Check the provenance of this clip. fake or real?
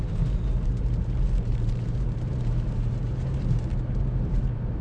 fake